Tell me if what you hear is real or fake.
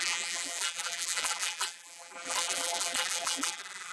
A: fake